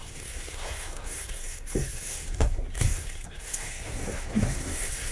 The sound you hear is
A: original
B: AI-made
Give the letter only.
B